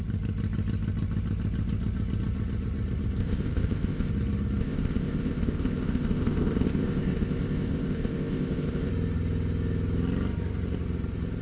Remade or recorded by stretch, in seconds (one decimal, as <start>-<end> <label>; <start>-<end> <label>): 0.0-3.2 recorded; 3.2-4.1 remade; 4.1-4.6 recorded; 4.6-8.9 remade; 8.9-11.4 recorded

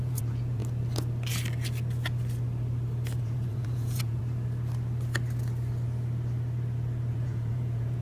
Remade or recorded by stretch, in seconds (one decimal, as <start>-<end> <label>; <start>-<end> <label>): 0.0-0.6 remade; 0.6-3.2 recorded; 3.2-4.2 remade; 4.2-7.1 recorded; 7.1-8.0 remade

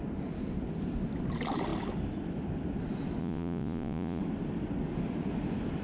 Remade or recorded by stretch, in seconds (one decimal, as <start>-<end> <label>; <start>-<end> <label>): 0.0-3.2 recorded; 3.2-4.2 remade; 4.2-5.8 recorded

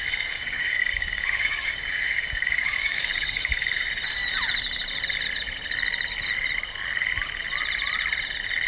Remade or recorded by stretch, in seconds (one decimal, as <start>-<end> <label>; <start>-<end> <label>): 0.0-3.9 remade; 3.9-8.7 recorded